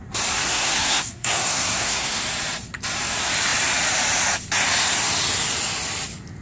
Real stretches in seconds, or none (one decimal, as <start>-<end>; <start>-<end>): 0.0-0.4; 2.2-6.4